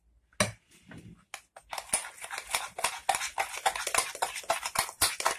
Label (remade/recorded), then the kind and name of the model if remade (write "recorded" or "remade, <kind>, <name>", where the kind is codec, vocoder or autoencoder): recorded